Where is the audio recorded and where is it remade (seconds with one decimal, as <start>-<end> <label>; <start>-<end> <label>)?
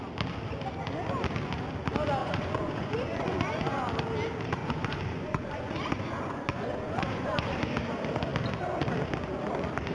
0.0-2.2 recorded; 2.2-3.9 remade; 3.9-4.6 recorded; 4.6-7.6 remade; 7.6-9.9 recorded